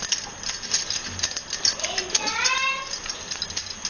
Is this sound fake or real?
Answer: real